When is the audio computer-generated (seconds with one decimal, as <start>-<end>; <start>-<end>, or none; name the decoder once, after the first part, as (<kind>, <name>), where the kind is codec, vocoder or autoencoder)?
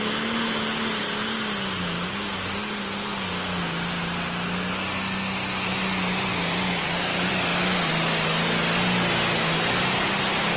6.3-7.3 (vocoder, BigVGAN v2)